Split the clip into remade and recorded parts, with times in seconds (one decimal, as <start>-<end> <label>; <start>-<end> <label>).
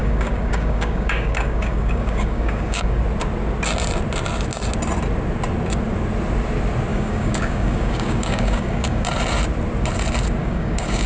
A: 0.0-3.0 remade; 3.0-6.9 recorded; 6.9-9.0 remade; 9.0-10.4 recorded; 10.4-11.1 remade